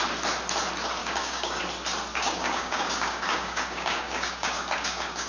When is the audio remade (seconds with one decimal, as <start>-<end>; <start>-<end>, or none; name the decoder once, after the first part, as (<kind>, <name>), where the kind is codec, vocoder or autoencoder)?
1.0-1.6 (codec, DAC); 2.1-5.3